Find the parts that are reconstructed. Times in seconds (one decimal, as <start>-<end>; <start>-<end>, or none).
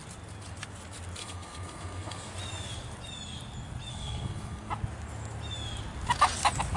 1.2-2.3; 3.9-4.7